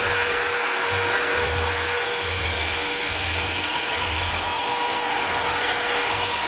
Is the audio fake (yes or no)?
yes